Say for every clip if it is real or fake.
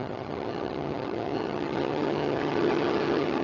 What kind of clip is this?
fake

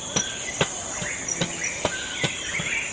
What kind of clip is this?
real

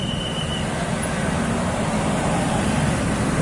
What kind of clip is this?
real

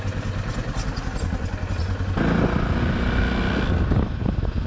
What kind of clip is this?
real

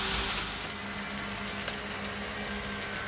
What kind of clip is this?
real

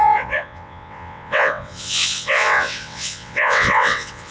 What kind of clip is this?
fake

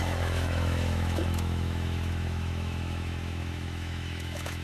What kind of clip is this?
fake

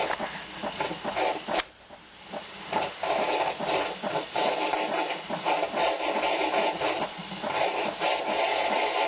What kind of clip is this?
real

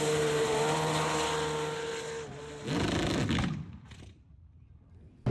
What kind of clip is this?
real